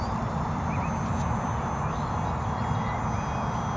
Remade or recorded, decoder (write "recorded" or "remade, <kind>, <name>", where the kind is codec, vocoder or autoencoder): recorded